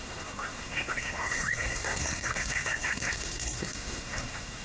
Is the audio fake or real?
fake